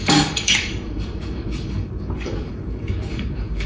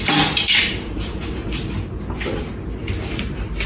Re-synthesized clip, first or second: first